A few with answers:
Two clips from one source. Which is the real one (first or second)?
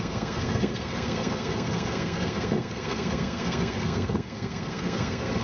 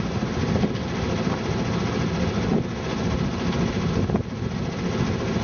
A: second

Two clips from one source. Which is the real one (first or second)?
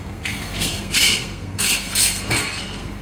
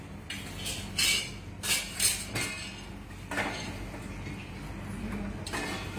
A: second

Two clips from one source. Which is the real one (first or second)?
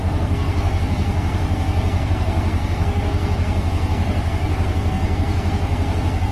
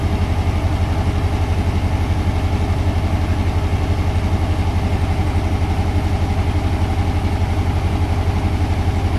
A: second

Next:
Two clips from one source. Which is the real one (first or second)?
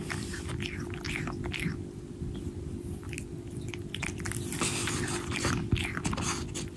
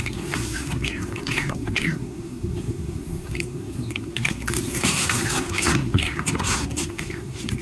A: first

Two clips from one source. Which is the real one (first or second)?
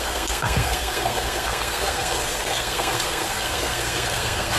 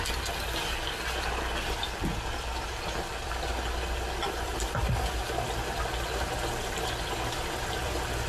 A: second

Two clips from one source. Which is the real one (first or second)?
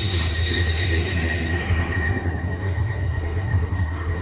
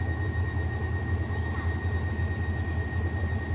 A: second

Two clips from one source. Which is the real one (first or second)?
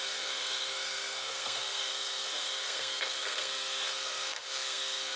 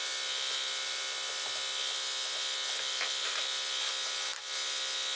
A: second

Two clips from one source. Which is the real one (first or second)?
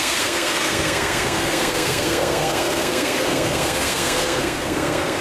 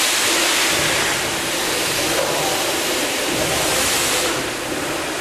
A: second